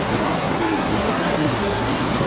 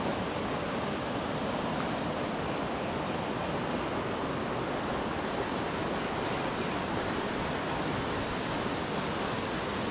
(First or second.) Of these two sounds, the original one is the second